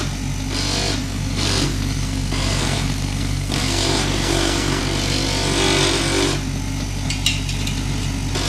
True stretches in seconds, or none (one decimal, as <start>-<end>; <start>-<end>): 0.0-1.0; 4.8-8.5